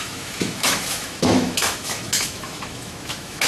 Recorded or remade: remade